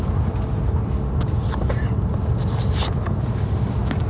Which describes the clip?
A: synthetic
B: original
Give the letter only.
B